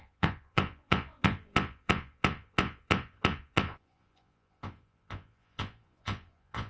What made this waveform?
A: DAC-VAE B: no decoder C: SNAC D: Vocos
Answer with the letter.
D